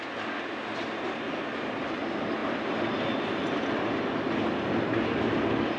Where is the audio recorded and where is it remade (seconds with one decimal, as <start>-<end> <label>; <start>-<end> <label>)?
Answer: 0.0-2.4 recorded; 2.4-3.7 remade; 3.7-5.8 recorded